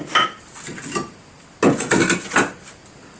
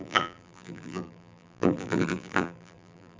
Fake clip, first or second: second